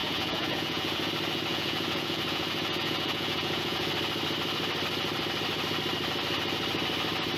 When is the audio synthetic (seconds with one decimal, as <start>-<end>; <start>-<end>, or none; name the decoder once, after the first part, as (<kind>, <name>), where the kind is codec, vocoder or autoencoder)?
0.0-1.1 (vocoder, Vocos); 1.5-3.9